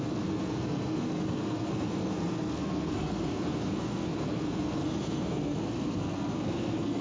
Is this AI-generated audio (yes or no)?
yes